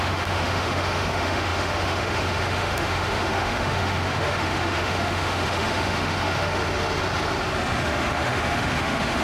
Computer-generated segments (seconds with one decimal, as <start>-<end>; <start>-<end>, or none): 0.0-6.6; 7.8-9.2